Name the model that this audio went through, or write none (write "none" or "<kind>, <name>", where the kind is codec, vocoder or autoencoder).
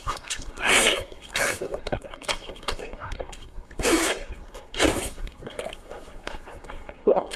codec, SNAC